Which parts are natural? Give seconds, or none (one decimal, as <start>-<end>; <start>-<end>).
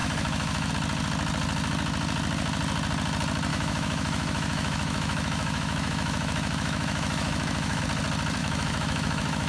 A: 0.7-3.5; 7.8-8.4